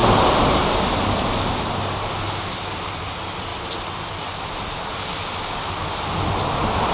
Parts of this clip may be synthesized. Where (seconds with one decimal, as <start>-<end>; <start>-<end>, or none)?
none